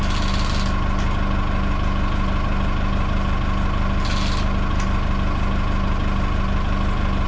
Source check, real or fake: real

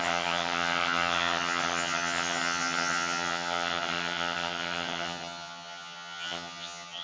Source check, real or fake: fake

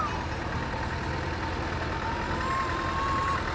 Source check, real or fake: real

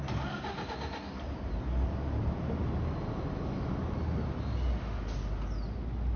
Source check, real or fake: real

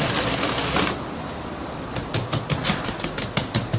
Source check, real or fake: real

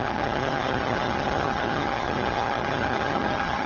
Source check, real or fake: fake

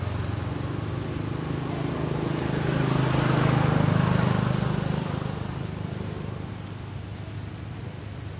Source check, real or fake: real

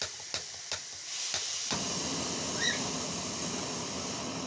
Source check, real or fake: real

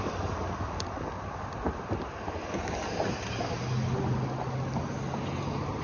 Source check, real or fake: real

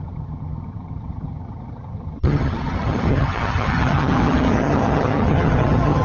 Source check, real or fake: fake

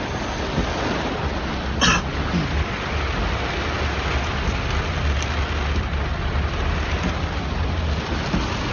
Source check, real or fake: real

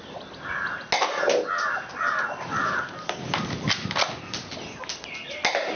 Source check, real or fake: real